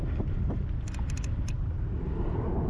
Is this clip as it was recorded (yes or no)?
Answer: yes